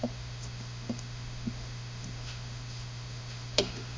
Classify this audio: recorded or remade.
remade